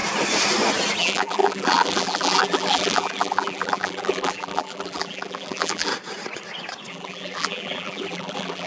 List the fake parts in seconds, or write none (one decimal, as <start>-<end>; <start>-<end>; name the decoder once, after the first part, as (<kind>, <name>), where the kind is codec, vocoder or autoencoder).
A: 1.0-5.9 (vocoder, BigVGAN v2); 6.9-8.7